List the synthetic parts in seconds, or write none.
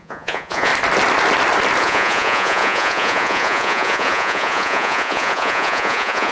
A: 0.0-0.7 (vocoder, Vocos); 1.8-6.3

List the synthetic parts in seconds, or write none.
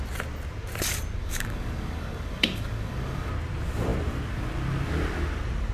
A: 1.2-3.3 (codec, DAC)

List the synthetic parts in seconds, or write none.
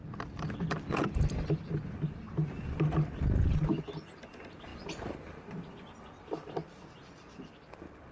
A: 3.8-4.7 (vocoder, BigVGAN v2); 6.8-8.1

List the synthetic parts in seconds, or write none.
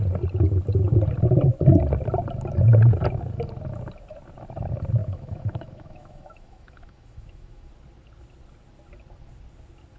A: 5.0-7.7 (autoencoder, DAC-VAE)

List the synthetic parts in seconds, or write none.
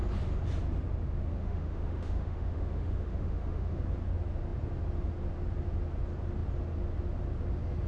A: 1.3-3.8 (autoencoder, DAC-VAE)